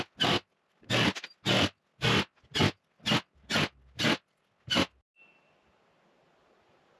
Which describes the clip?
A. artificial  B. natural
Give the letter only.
B